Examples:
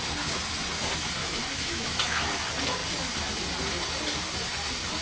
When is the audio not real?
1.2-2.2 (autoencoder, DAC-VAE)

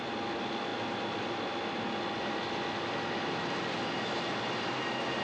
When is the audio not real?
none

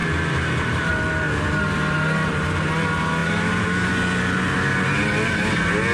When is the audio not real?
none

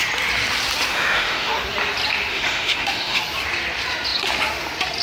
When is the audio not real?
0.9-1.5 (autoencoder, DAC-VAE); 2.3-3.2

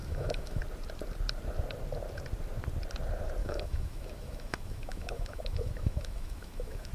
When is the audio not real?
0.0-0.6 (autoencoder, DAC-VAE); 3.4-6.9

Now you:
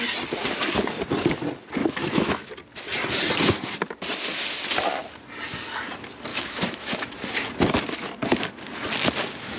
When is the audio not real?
1.8-2.5 (autoencoder, DAC-VAE); 6.3-7.1

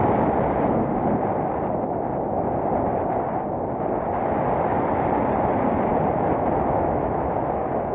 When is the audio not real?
none